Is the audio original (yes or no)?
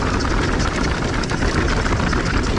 yes